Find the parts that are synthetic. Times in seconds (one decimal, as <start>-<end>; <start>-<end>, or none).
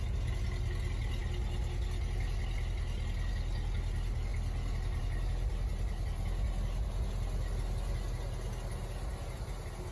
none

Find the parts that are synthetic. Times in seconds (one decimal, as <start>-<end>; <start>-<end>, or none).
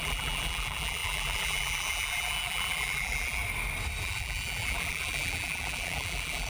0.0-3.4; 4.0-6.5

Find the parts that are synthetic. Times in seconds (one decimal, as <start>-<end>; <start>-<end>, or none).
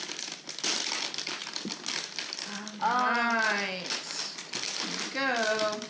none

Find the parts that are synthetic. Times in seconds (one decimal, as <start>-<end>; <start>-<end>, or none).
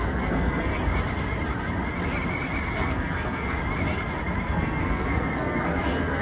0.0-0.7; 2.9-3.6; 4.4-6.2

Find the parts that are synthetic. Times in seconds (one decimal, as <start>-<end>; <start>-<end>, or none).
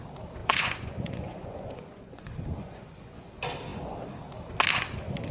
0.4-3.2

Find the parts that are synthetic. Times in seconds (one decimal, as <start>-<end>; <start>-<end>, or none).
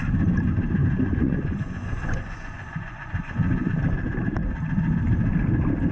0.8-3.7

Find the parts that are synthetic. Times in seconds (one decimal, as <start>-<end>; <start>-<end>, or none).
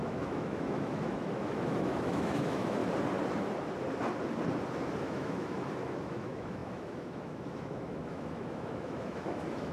0.0-2.8; 5.0-9.7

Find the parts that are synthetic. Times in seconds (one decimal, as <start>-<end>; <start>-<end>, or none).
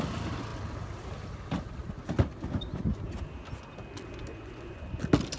4.3-5.0